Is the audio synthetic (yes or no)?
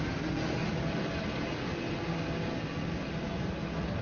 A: no